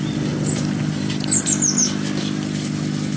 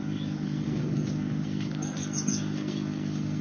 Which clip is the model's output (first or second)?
second